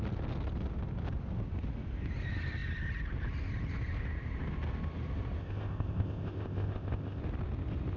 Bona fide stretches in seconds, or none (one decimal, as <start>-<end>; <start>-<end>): 0.0-5.4; 7.2-8.0